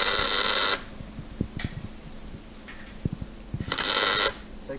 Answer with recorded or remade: recorded